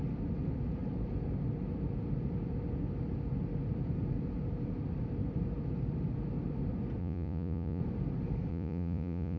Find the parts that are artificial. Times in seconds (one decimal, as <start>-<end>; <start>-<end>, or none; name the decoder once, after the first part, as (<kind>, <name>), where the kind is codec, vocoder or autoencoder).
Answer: 7.0-7.8 (vocoder, Vocos); 8.5-9.4